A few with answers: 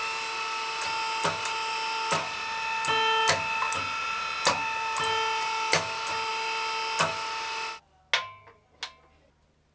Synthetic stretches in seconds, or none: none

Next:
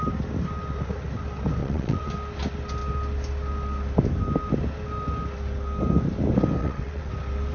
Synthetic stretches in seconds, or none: 1.6-2.1 (vocoder, WaveNeXt); 6.6-7.1